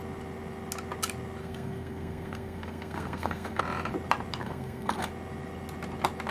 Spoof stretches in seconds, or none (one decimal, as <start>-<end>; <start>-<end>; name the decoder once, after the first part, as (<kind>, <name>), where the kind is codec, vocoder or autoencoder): 1.4-3.6 (codec, SNAC); 4.4-5.1